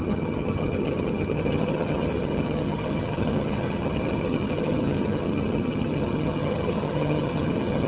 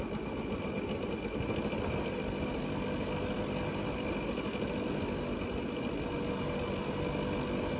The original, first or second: second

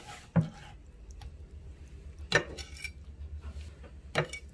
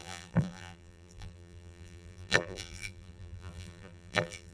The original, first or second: first